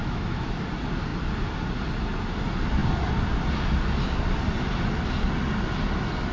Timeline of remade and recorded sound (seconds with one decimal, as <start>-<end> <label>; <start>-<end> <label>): 0.0-0.6 remade; 0.6-6.3 recorded